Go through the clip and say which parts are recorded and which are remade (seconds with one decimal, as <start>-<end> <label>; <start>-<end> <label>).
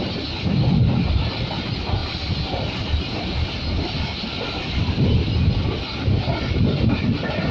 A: 0.0-7.5 recorded